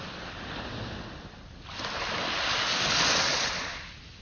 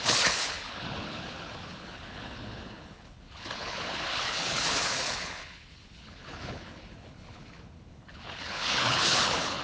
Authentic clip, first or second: first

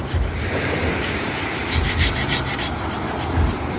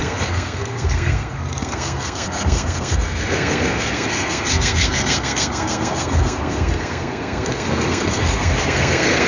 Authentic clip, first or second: first